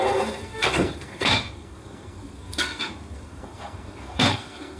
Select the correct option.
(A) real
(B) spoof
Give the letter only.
B